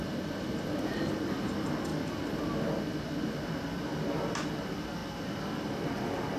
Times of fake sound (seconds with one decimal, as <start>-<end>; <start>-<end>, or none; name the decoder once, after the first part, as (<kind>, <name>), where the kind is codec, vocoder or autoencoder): none